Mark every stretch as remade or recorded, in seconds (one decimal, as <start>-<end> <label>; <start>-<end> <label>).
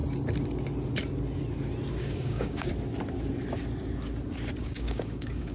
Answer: 0.0-2.0 recorded; 2.0-2.7 remade; 2.7-4.6 recorded; 4.6-5.5 remade